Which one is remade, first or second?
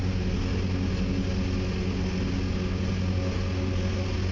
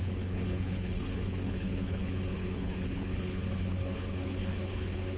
second